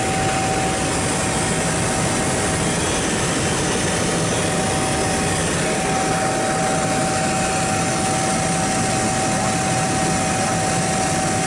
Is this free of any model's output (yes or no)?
yes